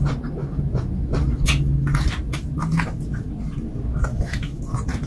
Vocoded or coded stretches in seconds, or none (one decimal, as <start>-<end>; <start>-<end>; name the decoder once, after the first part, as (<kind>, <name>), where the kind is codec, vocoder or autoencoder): 4.1-4.6 (autoencoder, DAC-VAE)